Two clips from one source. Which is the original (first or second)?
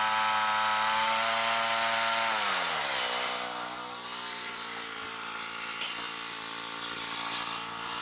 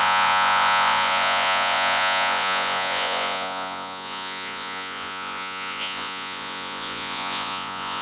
first